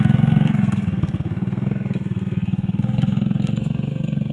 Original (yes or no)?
no